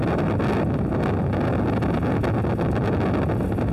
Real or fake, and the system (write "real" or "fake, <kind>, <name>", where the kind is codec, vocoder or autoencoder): real